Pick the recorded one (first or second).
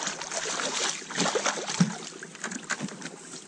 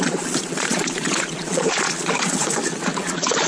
first